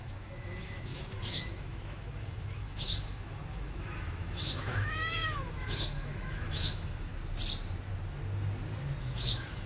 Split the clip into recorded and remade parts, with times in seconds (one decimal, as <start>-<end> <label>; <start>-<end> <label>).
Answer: 0.0-7.1 remade; 7.1-9.0 recorded; 9.0-9.7 remade